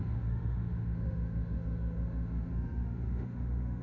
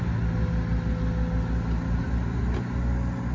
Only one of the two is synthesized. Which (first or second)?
first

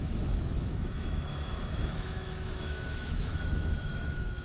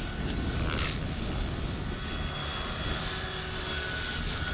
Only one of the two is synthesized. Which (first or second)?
first